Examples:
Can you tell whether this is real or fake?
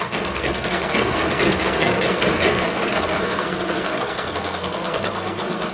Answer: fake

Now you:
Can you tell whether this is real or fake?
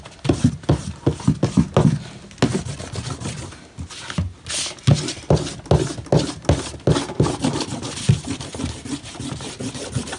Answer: real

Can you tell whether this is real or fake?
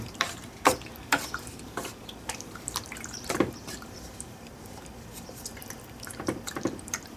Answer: fake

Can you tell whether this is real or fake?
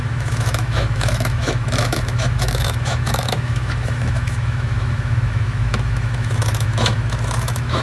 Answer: fake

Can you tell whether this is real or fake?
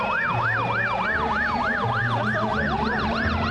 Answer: fake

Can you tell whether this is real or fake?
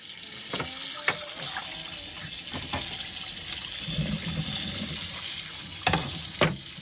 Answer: real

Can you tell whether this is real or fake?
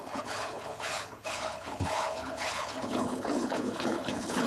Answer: fake